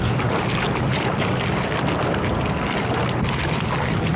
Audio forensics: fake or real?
real